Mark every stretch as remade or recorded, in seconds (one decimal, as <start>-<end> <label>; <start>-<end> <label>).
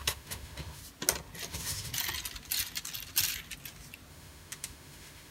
0.0-0.8 remade; 0.8-1.5 recorded; 1.5-1.9 remade; 1.9-4.1 recorded; 4.1-5.3 remade